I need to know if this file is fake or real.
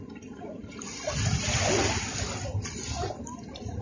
real